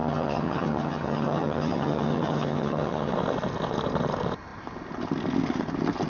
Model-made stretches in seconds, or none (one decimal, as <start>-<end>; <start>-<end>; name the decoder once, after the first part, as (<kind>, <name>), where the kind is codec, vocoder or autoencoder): 0.0-3.1 (vocoder, HiFi-GAN)